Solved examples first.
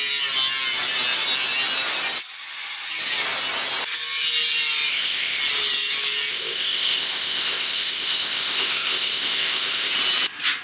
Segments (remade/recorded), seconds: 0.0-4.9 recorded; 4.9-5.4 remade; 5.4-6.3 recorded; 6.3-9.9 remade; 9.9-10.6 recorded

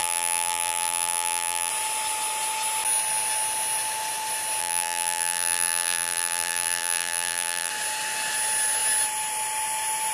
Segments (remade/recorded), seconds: 0.0-1.7 remade; 1.7-4.6 recorded; 4.6-7.7 remade; 7.7-10.1 recorded

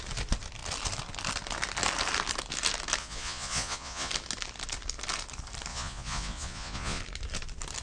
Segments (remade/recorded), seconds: 0.0-3.0 recorded; 3.0-4.1 remade; 4.1-5.7 recorded; 5.7-7.0 remade; 7.0-7.8 recorded